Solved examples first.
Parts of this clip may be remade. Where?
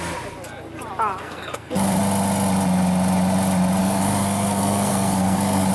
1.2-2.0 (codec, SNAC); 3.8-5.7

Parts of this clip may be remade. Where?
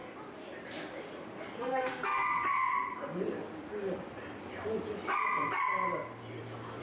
1.6-2.7 (codec, SNAC)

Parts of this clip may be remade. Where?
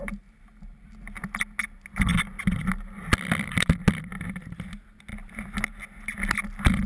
none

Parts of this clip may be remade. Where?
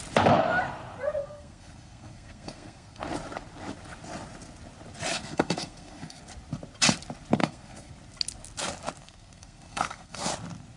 1.2-3.0 (codec, SNAC); 5.1-6.2; 7.4-7.9; 9.0-10.3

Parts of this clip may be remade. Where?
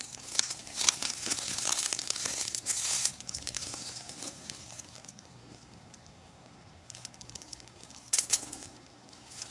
0.0-9.5 (codec, SNAC)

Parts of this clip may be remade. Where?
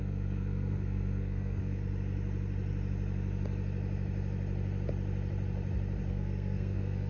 0.0-1.8 (codec, SNAC); 6.1-7.1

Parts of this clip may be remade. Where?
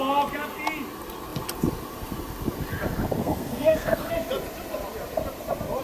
3.2-4.1 (codec, SNAC)